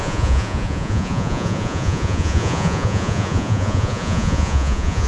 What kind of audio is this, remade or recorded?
remade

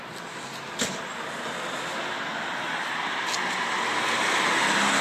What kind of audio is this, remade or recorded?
recorded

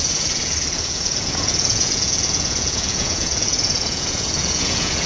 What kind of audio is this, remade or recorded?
remade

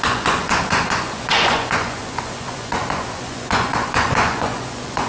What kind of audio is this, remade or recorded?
remade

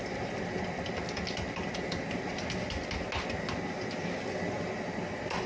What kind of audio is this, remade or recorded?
recorded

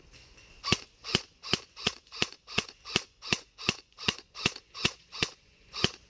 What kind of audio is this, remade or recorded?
remade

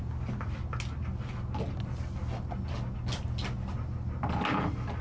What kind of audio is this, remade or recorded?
recorded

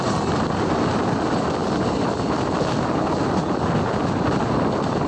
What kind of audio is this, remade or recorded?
recorded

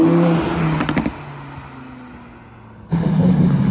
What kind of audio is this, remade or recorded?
recorded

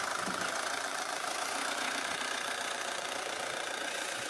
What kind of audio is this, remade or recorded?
remade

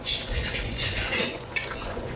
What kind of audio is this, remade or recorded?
remade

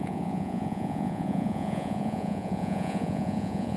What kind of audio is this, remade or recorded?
remade